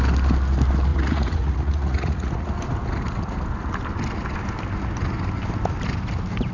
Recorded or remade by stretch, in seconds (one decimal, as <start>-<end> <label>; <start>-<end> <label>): 0.0-0.9 recorded; 0.9-2.5 remade; 2.5-6.5 recorded